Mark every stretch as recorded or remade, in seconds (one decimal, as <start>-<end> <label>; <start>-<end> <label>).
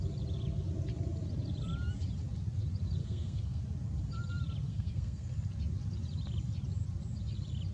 0.0-3.0 recorded; 3.0-3.6 remade; 3.6-4.7 recorded; 4.7-5.3 remade; 5.3-7.7 recorded